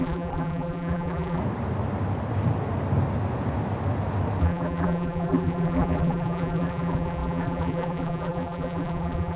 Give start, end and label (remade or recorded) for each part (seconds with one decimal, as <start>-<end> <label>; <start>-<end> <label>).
0.0-1.4 remade; 1.4-4.4 recorded; 4.4-9.4 remade